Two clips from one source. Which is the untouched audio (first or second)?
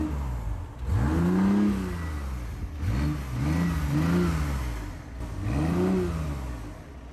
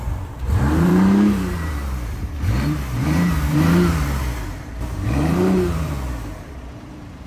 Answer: first